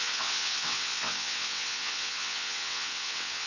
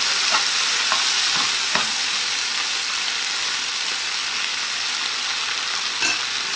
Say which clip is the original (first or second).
second